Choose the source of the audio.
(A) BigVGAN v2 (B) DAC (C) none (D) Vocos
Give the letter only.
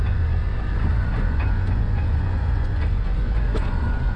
D